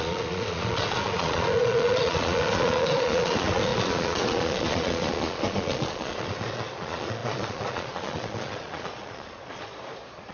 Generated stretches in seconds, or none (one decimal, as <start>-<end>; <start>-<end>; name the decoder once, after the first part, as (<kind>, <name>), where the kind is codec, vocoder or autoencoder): 0.0-10.3 (vocoder, Vocos)